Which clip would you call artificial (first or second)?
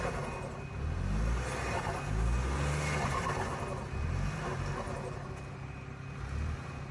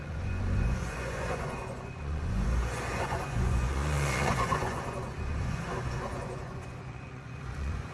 second